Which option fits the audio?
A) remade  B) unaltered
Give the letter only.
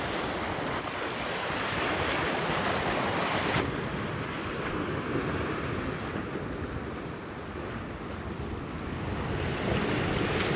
B